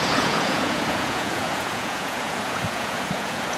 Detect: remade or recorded remade